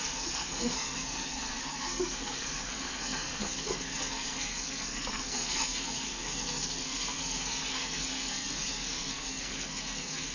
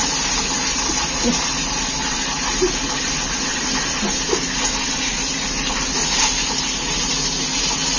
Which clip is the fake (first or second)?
first